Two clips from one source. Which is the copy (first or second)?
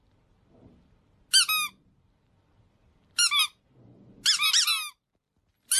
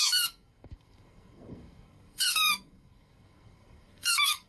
second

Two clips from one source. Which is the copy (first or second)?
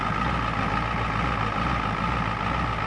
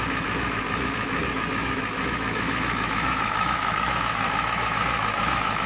second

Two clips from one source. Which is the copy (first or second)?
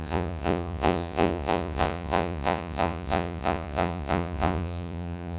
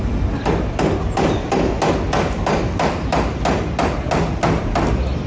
first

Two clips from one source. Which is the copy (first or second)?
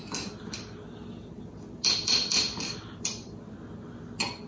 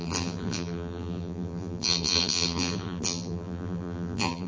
second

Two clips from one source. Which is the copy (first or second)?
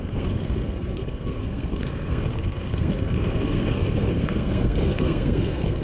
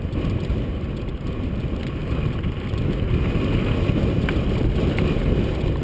first